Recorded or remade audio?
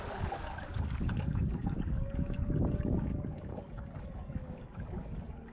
remade